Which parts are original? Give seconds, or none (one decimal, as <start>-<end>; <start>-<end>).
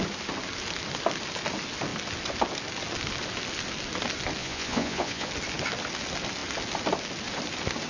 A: 0.0-4.4; 5.3-7.9